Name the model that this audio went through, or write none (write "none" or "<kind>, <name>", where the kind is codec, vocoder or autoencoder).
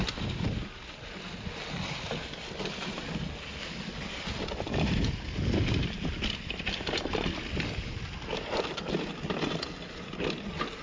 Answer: none